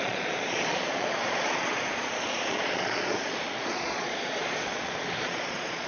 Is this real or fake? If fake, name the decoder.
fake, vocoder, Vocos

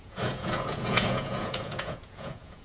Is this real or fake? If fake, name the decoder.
fake, vocoder, Vocos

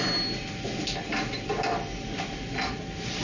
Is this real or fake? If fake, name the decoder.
real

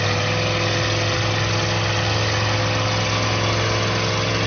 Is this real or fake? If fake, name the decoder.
real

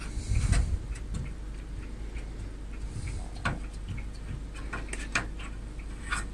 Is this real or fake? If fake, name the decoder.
real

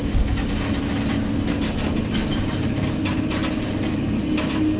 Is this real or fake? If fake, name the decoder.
real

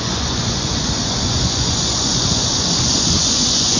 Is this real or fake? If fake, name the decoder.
fake, vocoder, Vocos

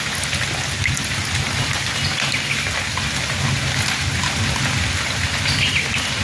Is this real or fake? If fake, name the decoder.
real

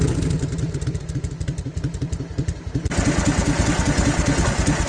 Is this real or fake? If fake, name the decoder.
real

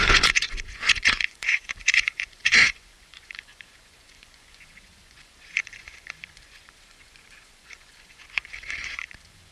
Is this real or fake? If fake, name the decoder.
fake, vocoder, Vocos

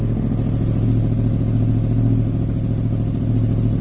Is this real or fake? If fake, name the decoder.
real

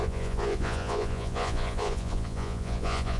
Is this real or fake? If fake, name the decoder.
fake, vocoder, Vocos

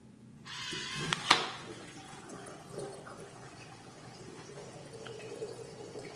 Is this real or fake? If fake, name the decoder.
fake, vocoder, Vocos